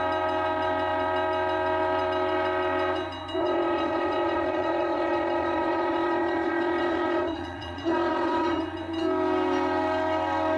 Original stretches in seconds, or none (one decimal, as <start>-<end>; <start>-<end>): 0.0-3.4; 8.6-10.6